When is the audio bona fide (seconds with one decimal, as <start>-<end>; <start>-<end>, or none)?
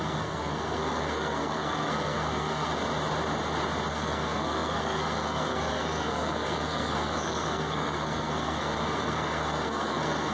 2.7-3.9